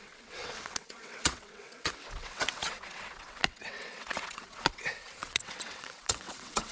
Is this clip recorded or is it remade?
remade